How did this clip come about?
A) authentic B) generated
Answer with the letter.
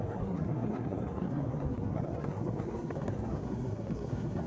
B